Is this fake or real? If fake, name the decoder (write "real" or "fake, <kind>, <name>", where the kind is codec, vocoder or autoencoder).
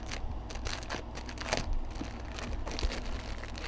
real